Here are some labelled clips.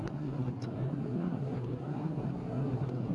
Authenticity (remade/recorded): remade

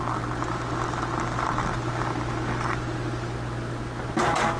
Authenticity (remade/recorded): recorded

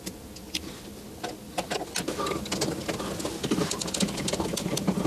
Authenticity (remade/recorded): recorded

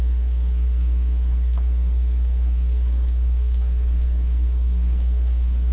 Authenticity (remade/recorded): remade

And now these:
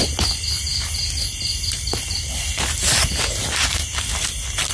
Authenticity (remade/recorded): recorded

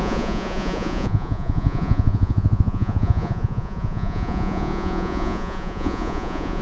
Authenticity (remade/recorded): remade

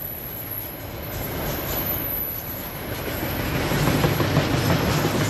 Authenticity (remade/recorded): recorded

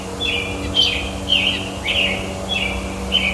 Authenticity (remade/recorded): recorded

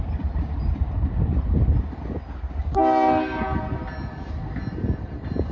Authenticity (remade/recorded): recorded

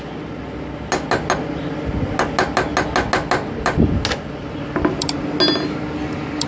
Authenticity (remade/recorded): recorded